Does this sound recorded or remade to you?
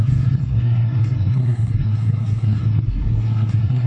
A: remade